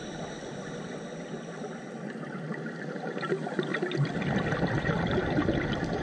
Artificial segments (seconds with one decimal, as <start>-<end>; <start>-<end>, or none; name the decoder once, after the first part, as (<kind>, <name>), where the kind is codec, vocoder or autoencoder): none